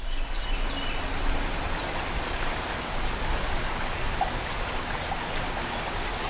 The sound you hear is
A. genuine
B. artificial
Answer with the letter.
A